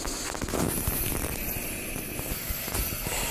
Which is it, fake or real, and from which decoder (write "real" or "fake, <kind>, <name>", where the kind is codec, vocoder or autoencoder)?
real